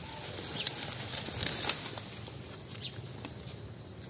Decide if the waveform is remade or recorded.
recorded